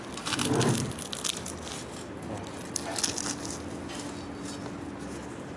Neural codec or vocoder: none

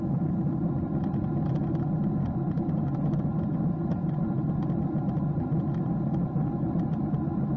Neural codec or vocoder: none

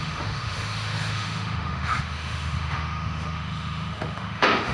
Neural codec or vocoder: autoencoder, DAC-VAE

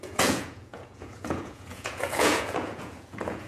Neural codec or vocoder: vocoder, Vocos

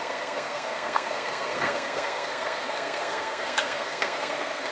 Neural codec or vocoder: codec, SNAC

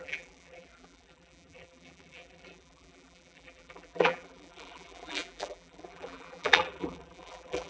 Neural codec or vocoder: vocoder, BigVGAN v2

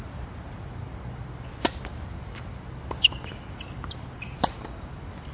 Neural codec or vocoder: none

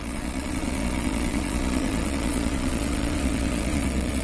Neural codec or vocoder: vocoder, Vocos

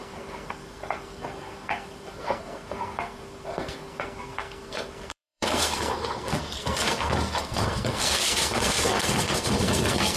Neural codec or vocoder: codec, SNAC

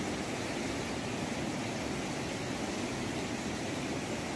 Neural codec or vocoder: none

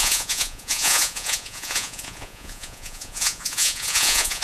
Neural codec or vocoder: vocoder, Vocos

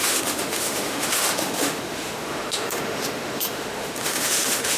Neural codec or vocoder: autoencoder, DAC-VAE